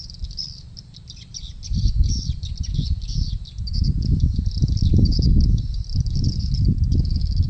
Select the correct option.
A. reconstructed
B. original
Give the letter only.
A